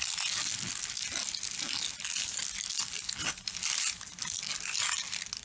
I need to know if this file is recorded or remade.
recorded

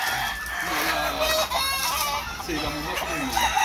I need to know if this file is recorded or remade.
recorded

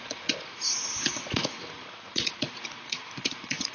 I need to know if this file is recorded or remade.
remade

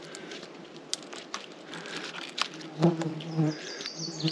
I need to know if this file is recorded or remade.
recorded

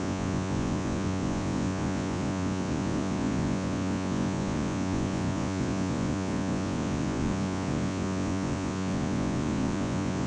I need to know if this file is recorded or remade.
remade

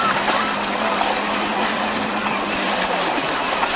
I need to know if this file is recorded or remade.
recorded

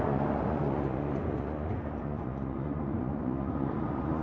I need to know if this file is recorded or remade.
remade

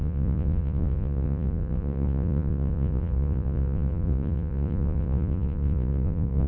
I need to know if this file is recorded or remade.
remade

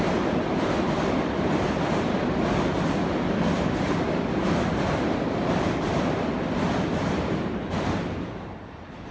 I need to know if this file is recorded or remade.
recorded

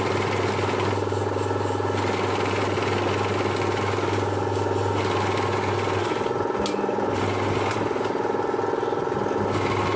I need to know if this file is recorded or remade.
recorded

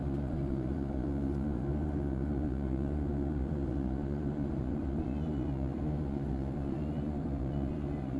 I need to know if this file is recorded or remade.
remade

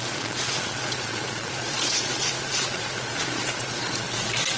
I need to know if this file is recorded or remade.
remade